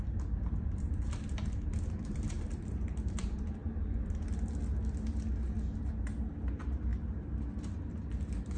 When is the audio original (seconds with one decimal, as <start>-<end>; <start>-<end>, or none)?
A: 3.6-5.8; 6.9-7.6